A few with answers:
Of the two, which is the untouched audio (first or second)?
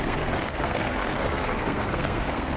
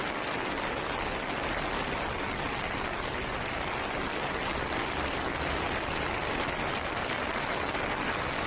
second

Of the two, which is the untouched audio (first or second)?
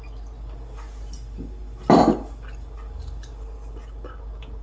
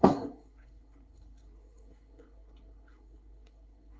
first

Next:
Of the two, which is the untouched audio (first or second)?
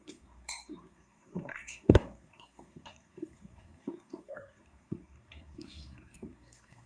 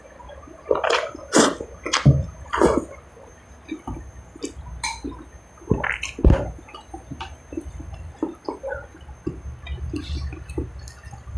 second